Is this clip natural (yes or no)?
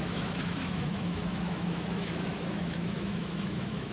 no